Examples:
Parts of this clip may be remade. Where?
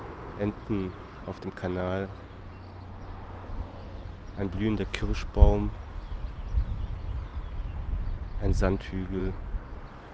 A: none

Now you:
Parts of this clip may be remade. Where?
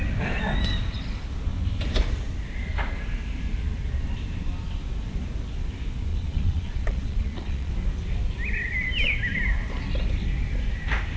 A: 6.1-7.7 (vocoder, Vocos)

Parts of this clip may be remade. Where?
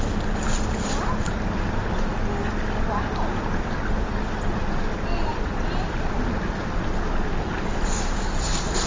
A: none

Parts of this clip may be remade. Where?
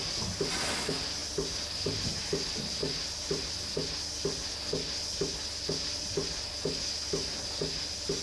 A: none